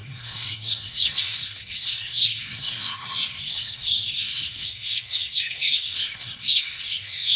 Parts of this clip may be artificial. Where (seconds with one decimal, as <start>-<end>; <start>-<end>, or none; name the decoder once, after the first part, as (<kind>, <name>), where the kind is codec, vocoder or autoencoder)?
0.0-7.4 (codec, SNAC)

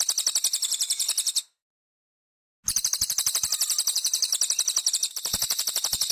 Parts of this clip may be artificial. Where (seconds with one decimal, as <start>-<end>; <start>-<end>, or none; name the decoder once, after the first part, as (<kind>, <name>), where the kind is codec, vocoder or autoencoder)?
none

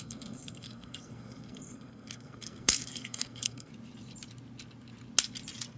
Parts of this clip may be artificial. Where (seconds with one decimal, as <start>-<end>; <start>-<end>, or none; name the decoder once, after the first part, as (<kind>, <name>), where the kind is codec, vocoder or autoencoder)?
0.0-3.7 (codec, SNAC)